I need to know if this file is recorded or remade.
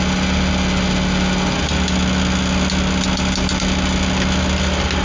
recorded